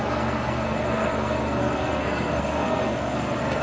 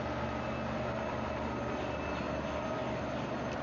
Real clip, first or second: second